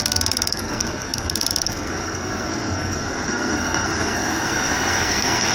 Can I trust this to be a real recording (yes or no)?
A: no